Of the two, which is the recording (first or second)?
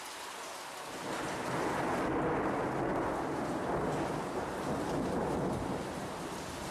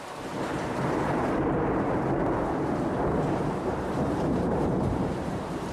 first